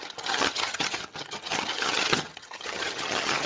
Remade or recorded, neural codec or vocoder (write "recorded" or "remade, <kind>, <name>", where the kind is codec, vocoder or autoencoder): remade, vocoder, HiFi-GAN